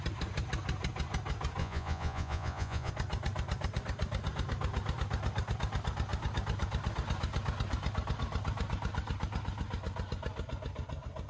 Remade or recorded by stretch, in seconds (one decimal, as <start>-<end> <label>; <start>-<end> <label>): 0.0-1.6 recorded; 1.6-2.9 remade; 2.9-11.3 recorded